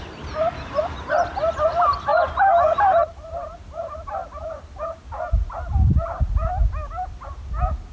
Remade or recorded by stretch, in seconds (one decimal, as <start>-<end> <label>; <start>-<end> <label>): 0.0-7.9 recorded